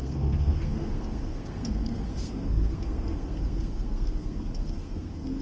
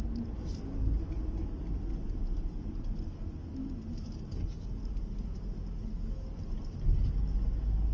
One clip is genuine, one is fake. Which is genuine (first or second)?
second